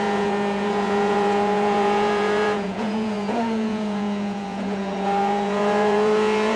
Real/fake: fake